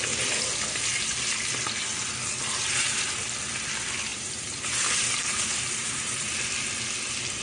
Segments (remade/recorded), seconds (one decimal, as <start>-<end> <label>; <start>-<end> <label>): 0.0-4.1 recorded; 4.1-6.4 remade; 6.4-7.4 recorded